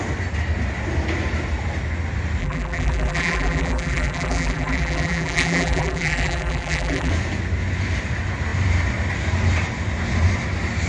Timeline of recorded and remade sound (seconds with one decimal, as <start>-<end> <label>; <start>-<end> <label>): 0.0-2.4 recorded; 2.4-7.1 remade; 7.1-10.9 recorded